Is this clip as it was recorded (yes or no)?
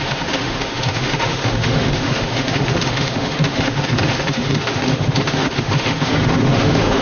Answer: no